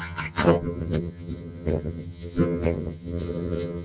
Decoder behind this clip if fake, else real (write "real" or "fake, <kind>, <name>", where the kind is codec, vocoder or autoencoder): fake, vocoder, HiFi-GAN